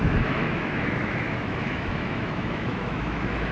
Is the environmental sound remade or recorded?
remade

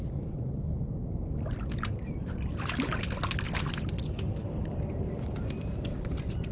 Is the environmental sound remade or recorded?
recorded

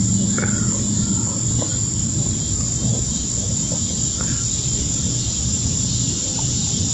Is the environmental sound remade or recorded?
recorded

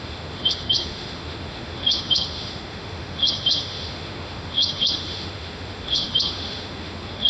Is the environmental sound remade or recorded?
remade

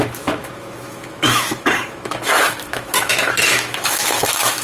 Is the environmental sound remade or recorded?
remade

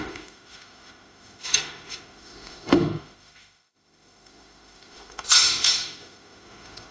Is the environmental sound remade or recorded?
remade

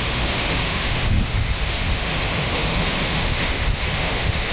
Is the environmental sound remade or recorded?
remade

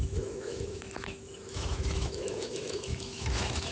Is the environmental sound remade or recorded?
remade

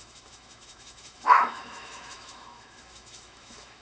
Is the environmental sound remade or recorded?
remade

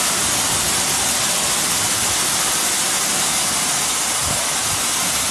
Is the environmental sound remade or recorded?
recorded